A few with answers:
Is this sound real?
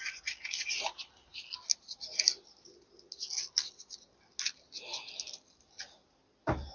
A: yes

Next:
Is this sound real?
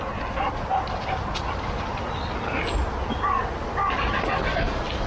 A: yes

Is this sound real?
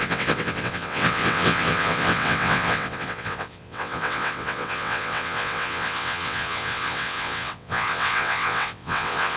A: no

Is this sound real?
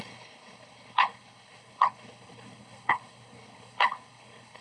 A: no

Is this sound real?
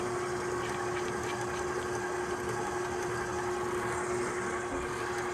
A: yes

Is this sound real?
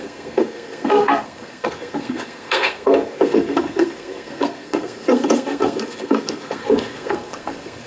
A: no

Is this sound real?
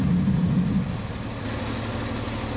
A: yes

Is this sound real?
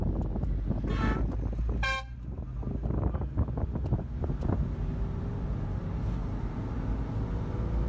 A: yes